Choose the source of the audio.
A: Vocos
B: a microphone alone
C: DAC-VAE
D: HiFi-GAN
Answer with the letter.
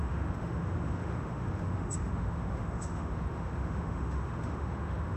C